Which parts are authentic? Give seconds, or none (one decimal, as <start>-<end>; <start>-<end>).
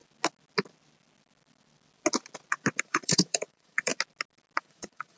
0.0-2.8; 3.9-4.6